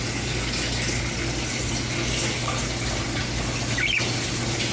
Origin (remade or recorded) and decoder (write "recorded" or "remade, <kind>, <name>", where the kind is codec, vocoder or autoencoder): recorded